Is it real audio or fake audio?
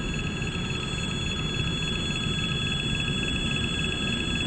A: real